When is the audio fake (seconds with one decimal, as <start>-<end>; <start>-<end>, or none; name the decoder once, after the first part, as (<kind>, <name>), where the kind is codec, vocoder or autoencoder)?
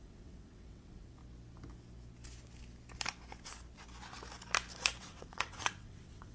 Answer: 0.0-1.2 (vocoder, WaveNeXt); 5.0-6.3